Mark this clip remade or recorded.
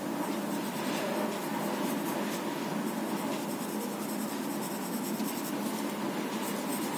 recorded